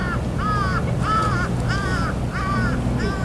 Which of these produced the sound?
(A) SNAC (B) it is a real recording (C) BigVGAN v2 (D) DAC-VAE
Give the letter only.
C